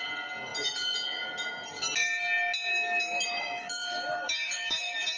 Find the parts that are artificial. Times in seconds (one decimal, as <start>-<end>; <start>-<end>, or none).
2.7-5.2